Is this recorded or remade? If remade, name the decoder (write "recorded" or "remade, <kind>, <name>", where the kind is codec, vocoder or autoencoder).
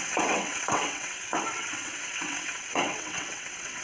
remade, vocoder, WaveNeXt